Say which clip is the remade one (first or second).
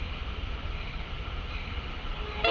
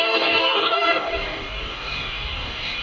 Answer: second